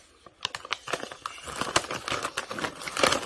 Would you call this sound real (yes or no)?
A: yes